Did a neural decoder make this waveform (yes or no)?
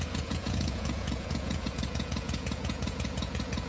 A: yes